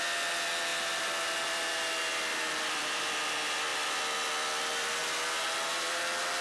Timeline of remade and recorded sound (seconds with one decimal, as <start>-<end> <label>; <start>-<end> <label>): 0.0-0.7 recorded; 0.7-3.1 remade; 3.1-3.7 recorded; 3.7-6.0 remade; 6.0-6.4 recorded